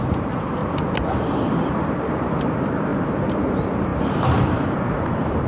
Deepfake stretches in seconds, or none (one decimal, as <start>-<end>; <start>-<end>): 0.0-0.6; 1.2-2.9; 3.5-5.5